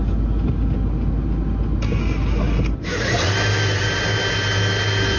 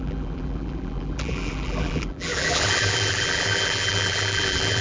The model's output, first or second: second